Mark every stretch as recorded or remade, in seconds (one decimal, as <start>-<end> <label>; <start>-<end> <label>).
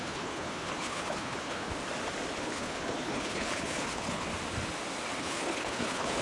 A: 0.0-1.7 remade; 1.7-2.4 recorded; 2.4-4.3 remade; 4.3-5.2 recorded; 5.2-6.2 remade